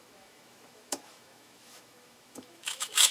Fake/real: fake